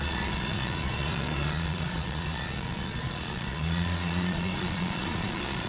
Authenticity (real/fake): fake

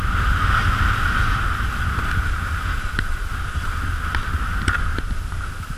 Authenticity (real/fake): real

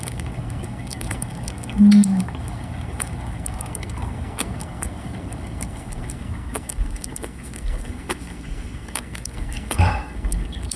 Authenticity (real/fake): fake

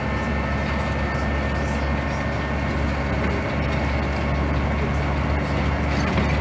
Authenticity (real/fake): real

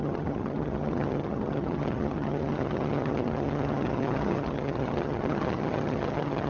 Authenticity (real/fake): fake